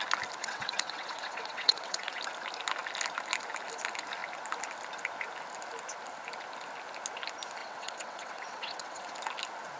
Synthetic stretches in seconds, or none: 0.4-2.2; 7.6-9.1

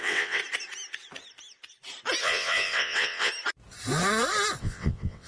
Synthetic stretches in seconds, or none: 0.0-0.4; 2.2-3.3; 4.6-5.3

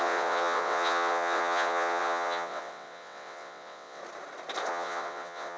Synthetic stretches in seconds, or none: 0.0-4.0; 4.7-5.6

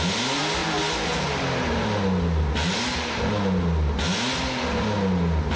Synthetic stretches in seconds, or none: none

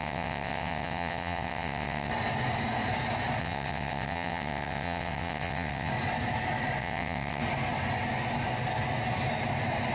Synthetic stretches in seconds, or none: 0.0-2.1; 3.4-5.9; 6.8-7.4